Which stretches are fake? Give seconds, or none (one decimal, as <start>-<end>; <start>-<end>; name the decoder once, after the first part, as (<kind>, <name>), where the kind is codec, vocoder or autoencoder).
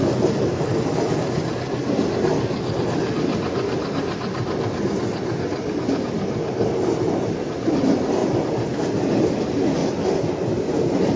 none